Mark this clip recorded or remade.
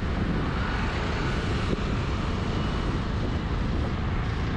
recorded